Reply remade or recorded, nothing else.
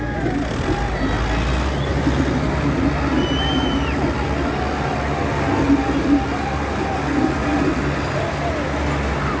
recorded